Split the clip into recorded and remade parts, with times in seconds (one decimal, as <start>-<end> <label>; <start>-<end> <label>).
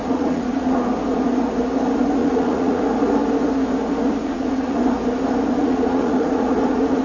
0.0-0.8 remade; 0.8-2.2 recorded; 2.2-2.8 remade; 2.8-4.2 recorded; 4.2-4.8 remade; 4.8-5.5 recorded; 5.5-7.0 remade